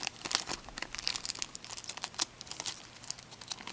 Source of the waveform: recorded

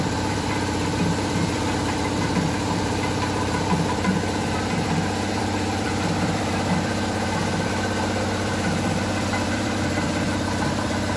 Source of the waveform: remade